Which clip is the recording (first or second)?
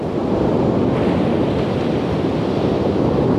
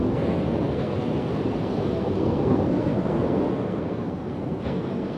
first